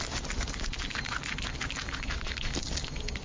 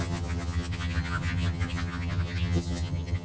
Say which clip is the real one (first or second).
first